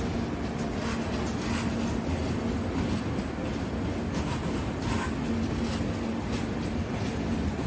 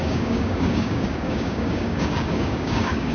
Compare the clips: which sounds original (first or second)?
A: first